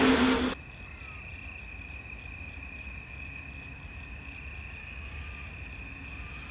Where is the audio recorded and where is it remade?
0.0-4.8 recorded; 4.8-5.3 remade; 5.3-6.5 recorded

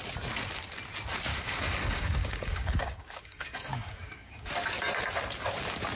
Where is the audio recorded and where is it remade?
0.0-1.3 recorded; 1.3-4.5 remade; 4.5-6.0 recorded

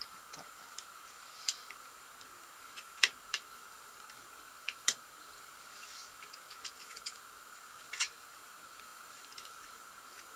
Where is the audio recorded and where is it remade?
0.0-10.4 remade

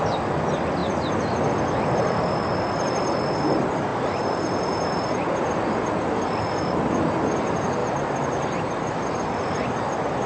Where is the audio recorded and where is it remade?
0.0-10.3 recorded

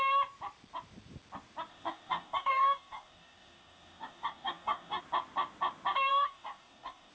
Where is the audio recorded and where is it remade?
0.0-1.7 recorded; 1.7-5.0 remade; 5.0-6.1 recorded; 6.1-7.1 remade

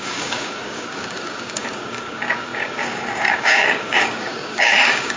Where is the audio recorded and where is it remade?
0.0-5.2 remade